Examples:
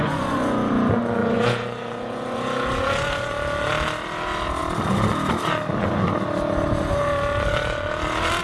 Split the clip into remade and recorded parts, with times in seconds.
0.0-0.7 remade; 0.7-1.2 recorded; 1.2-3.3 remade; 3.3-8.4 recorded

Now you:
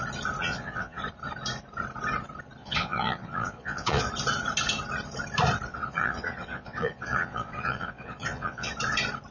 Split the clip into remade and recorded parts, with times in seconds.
0.0-0.4 recorded; 0.4-1.0 remade; 1.0-2.6 recorded; 2.6-4.1 remade; 4.1-5.7 recorded; 5.7-8.7 remade; 8.7-9.3 recorded

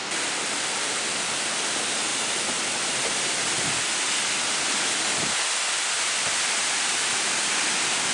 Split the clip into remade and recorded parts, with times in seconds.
0.0-8.1 recorded